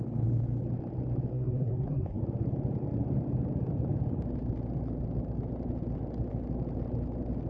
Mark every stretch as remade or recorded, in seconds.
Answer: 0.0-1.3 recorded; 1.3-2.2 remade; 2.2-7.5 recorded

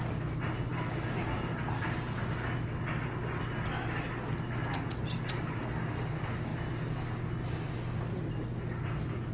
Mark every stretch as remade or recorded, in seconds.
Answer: 0.0-4.7 recorded; 4.7-5.3 remade; 5.3-9.3 recorded

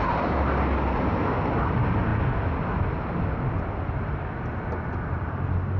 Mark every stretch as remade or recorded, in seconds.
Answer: 0.0-5.8 recorded

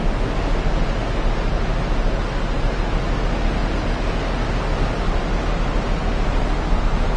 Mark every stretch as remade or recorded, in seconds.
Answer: 0.0-7.2 recorded

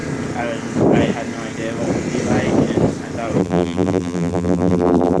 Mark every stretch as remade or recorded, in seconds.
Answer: 0.0-3.4 recorded; 3.4-5.2 remade

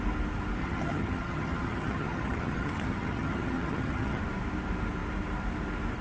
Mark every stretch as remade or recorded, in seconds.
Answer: 0.0-0.6 recorded; 0.6-4.2 remade; 4.2-6.0 recorded

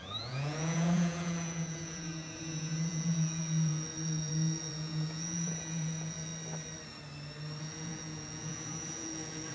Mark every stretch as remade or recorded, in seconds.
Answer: 0.0-6.3 remade; 6.3-7.6 recorded; 7.6-9.5 remade

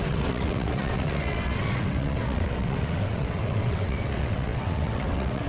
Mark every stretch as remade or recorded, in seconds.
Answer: 0.0-5.5 remade